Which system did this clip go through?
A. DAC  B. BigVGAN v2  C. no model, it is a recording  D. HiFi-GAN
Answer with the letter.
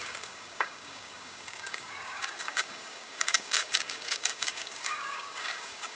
A